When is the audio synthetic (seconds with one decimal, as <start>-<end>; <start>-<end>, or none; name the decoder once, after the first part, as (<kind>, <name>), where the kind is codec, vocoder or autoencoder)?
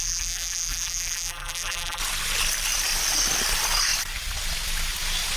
0.0-2.0 (vocoder, BigVGAN v2)